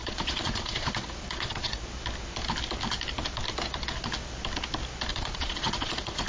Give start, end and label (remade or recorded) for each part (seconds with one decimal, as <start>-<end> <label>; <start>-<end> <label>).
0.0-1.8 remade; 1.8-5.1 recorded; 5.1-6.3 remade